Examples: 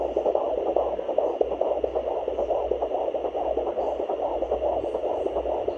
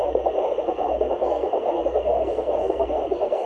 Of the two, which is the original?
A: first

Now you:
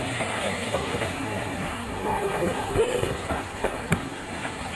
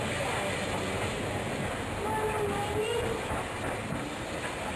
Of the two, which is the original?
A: second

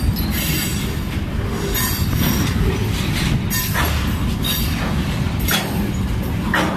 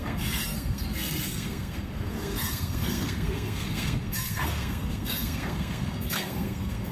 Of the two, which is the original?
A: first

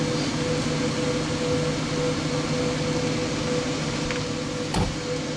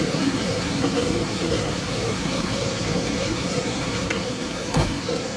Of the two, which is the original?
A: first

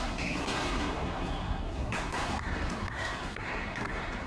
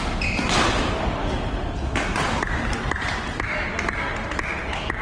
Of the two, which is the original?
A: second